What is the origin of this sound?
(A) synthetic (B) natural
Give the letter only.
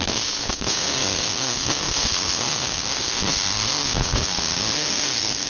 A